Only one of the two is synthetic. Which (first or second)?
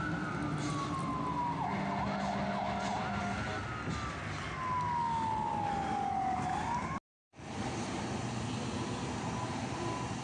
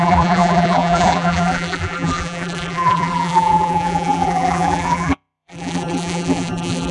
second